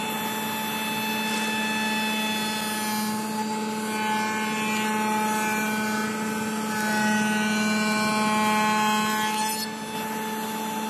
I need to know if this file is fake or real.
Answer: real